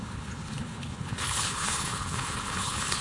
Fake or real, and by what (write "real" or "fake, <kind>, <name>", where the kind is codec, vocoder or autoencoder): fake, codec, HILCodec